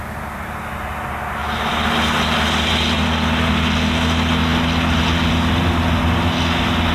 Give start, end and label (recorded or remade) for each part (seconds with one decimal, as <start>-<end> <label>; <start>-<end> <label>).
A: 0.0-6.9 recorded